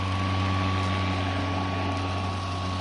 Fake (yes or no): no